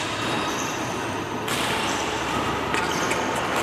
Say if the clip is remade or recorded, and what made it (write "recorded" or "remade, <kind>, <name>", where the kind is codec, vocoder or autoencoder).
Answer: recorded